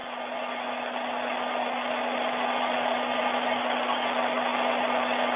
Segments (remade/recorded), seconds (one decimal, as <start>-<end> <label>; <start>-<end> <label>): 0.0-5.4 recorded